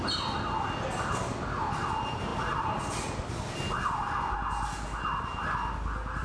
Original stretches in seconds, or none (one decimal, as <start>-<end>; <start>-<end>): 0.0-6.2